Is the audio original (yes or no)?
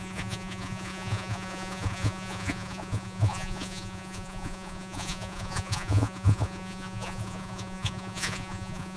no